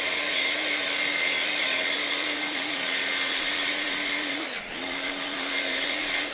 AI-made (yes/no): yes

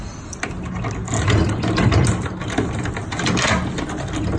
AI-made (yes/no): no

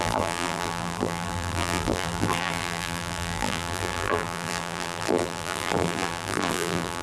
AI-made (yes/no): yes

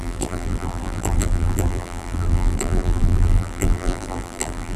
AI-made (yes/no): yes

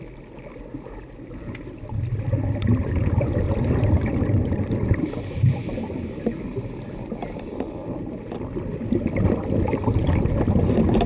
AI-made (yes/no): yes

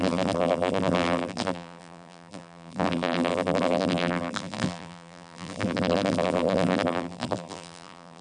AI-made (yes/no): yes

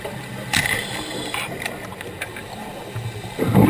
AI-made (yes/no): no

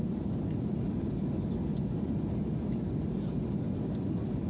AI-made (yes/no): no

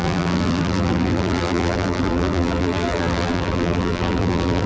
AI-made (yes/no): yes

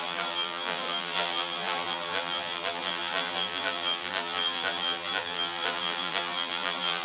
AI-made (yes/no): yes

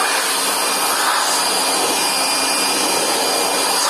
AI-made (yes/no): no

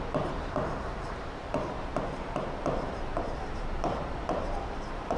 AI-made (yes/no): yes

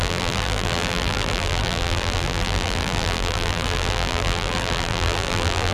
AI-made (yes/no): yes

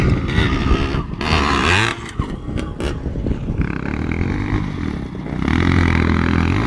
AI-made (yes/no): no